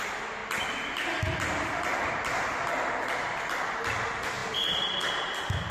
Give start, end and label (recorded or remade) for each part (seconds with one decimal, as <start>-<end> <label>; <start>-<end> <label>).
0.0-5.7 recorded